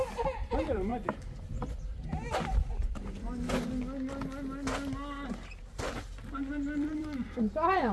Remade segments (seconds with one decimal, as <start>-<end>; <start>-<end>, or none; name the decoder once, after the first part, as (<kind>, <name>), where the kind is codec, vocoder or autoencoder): 0.0-0.9 (vocoder, BigVGAN v2); 5.6-7.9